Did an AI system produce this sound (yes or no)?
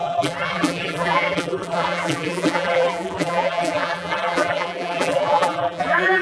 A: yes